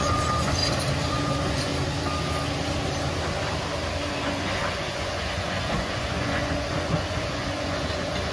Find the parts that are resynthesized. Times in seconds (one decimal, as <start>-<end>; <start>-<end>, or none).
0.0-0.6; 1.1-1.7; 4.1-8.3